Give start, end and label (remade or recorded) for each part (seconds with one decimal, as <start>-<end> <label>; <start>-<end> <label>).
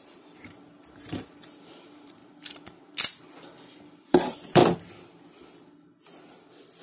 0.0-2.2 remade; 2.2-4.1 recorded; 4.1-4.6 remade; 4.6-6.8 recorded